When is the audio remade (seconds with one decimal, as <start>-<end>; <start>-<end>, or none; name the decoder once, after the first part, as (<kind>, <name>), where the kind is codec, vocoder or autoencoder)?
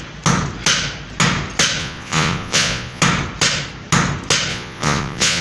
1.8-3.0 (vocoder, Vocos); 4.5-5.4